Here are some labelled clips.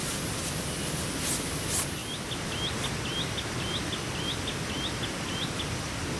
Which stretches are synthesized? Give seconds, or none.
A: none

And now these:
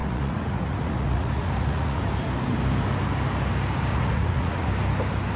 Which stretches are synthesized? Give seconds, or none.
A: 0.0-2.0 (vocoder, Vocos); 3.9-4.7